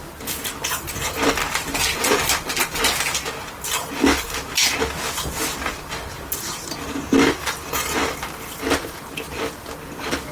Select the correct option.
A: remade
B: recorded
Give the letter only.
B